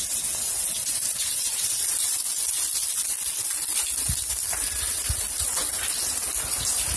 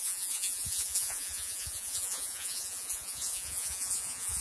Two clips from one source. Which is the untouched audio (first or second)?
first